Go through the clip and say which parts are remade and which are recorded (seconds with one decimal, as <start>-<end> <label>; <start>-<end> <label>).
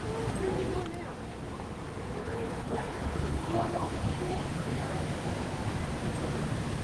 0.0-2.2 recorded; 2.2-4.8 remade; 4.8-6.8 recorded